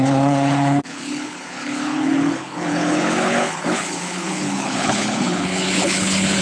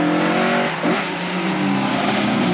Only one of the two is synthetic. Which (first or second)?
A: first